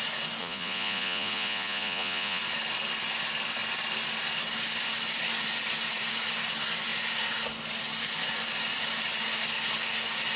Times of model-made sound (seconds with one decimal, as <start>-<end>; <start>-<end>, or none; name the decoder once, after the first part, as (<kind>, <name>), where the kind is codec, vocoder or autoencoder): 0.4-2.4 (vocoder, Vocos)